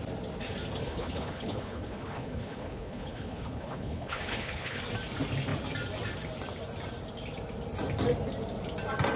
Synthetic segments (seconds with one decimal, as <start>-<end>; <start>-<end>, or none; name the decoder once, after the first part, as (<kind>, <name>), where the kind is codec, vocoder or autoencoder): 0.8-4.8 (codec, HILCodec)